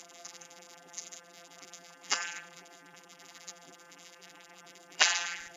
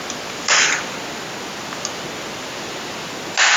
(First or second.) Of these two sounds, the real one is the second